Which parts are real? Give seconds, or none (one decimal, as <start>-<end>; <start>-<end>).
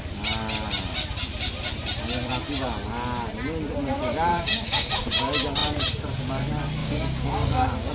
0.0-4.3; 4.9-6.8